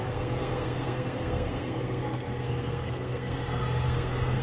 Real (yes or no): no